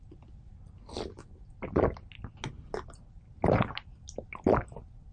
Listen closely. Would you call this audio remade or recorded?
recorded